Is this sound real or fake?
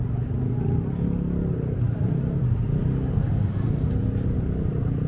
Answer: real